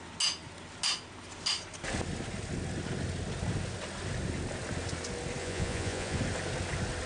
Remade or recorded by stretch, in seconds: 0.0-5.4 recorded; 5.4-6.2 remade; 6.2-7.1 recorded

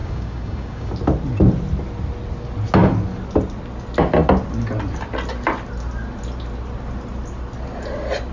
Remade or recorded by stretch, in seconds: 0.0-0.9 remade; 0.9-8.3 recorded

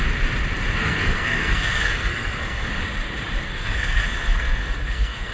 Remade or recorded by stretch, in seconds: 0.0-0.8 recorded; 0.8-2.7 remade; 2.7-3.4 recorded; 3.4-5.3 remade

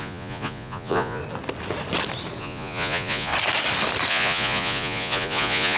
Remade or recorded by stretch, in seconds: 0.0-1.2 remade; 1.2-2.4 recorded; 2.4-3.3 remade; 3.3-4.1 recorded; 4.1-5.8 remade

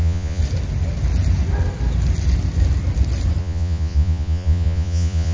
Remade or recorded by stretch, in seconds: 0.0-0.4 remade; 0.4-3.4 recorded; 3.4-5.3 remade

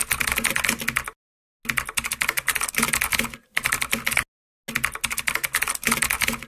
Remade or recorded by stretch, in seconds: 0.0-6.5 recorded